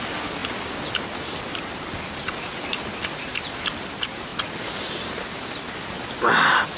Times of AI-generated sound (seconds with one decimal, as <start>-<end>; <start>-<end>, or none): none